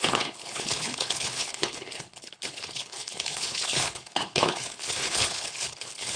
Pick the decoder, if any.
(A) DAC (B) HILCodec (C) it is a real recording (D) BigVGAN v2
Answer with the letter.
B